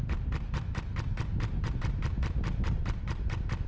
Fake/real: real